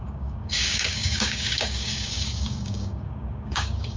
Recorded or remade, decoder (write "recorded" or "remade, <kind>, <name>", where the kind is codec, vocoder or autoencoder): remade, codec, DAC